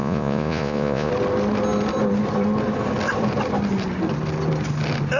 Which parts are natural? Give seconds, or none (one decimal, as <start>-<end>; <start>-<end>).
1.1-5.2